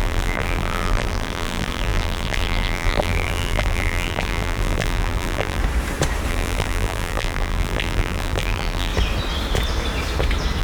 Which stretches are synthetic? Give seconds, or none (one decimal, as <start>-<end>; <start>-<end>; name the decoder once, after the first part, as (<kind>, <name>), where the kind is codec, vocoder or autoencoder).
0.0-5.6 (vocoder, BigVGAN v2); 6.3-8.9